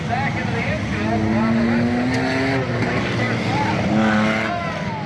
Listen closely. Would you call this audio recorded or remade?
recorded